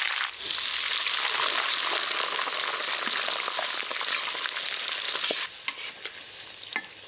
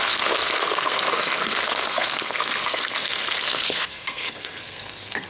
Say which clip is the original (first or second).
first